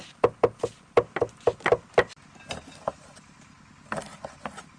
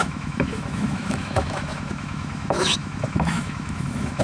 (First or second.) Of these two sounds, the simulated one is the second